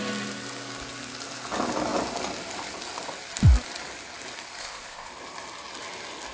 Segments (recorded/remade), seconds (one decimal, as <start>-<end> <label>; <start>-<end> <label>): 0.0-4.6 recorded; 4.6-5.1 remade; 5.1-6.3 recorded